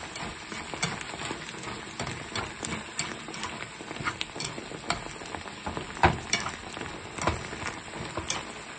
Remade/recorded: recorded